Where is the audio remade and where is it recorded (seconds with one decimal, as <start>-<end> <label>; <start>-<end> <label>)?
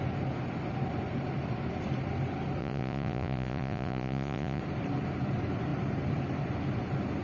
0.0-2.6 recorded; 2.6-4.6 remade; 4.6-7.2 recorded